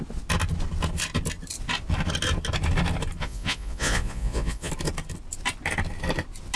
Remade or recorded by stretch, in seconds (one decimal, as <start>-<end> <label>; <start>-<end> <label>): 0.0-3.2 recorded; 3.2-4.7 remade; 4.7-6.6 recorded